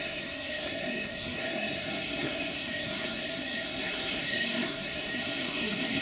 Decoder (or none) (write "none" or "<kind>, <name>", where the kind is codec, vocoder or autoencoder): codec, SNAC